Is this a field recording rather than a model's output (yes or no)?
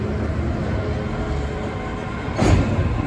yes